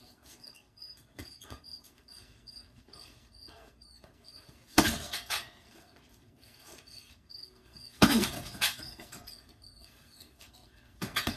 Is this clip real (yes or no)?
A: no